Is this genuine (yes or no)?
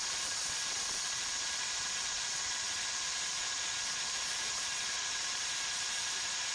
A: no